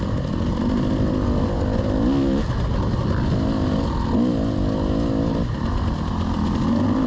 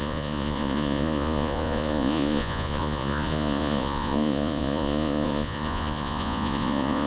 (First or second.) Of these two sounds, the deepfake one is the second